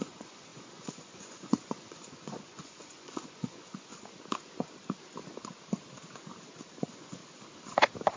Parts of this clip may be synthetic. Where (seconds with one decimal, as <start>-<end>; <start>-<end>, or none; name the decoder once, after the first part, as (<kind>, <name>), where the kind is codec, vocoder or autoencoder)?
0.0-3.9 (vocoder, Vocos); 6.8-7.2